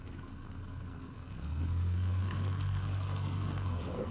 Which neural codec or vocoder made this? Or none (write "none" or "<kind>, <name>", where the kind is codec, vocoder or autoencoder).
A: codec, SNAC